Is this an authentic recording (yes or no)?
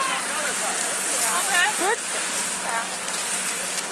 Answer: yes